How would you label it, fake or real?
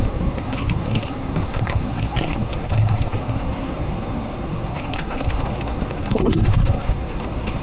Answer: fake